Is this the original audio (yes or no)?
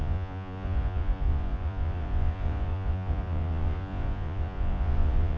no